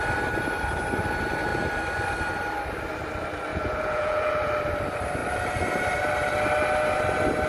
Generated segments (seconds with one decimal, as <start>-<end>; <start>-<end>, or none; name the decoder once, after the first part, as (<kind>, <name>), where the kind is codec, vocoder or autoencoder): 3.5-4.5 (vocoder, Vocos)